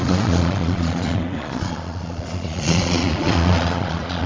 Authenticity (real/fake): fake